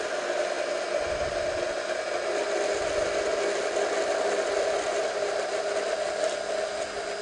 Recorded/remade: recorded